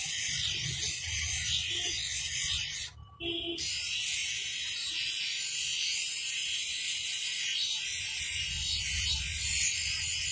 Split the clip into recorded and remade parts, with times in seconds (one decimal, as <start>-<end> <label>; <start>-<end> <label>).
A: 0.0-4.2 recorded; 4.2-5.3 remade; 5.3-5.7 recorded; 5.7-8.0 remade; 8.0-10.3 recorded